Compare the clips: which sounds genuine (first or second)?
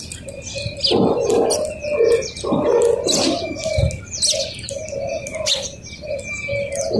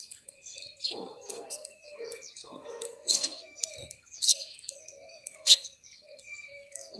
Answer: first